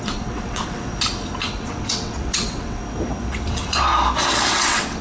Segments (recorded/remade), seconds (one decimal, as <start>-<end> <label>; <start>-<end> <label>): 0.0-0.9 remade; 0.9-1.4 recorded; 1.4-2.8 remade; 2.8-3.3 recorded; 3.3-3.9 remade; 3.9-4.5 recorded; 4.5-5.0 remade